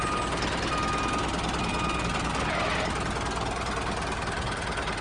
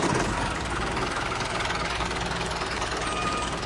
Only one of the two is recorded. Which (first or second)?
first